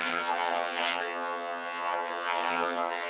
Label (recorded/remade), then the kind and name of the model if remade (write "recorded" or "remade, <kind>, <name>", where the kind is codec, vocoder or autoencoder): remade, vocoder, HiFi-GAN